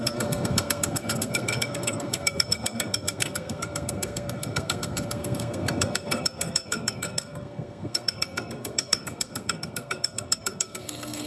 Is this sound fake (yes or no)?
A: yes